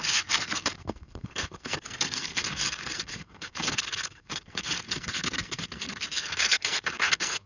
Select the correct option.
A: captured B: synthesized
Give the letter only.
B